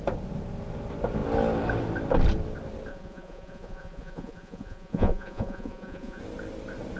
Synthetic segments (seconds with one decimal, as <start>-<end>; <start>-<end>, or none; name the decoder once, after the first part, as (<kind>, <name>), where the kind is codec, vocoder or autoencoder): 2.9-6.2 (vocoder, Vocos)